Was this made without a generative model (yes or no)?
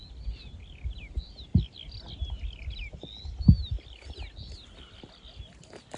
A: yes